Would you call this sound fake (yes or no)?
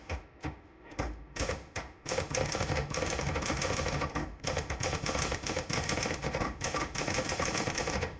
yes